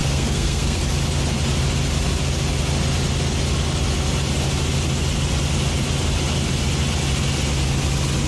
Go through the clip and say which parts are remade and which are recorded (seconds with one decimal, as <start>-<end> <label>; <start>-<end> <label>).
0.0-0.8 remade; 0.8-8.3 recorded